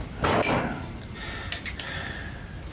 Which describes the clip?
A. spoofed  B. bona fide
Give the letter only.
B